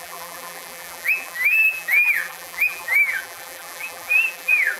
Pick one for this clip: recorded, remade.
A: remade